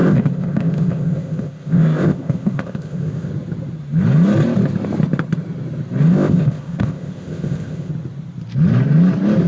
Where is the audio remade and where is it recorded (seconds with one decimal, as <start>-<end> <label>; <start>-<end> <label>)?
0.0-3.3 remade; 3.3-6.1 recorded; 6.1-7.9 remade; 7.9-9.5 recorded